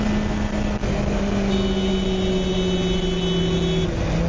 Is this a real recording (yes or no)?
yes